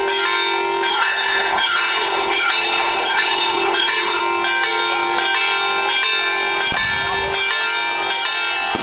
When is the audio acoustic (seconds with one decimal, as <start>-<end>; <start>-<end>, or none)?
0.0-0.9; 4.2-8.8